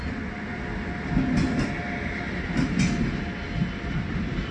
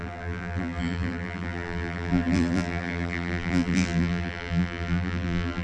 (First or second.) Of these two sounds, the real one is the first